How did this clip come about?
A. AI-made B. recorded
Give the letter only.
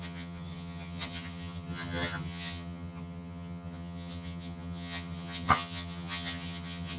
A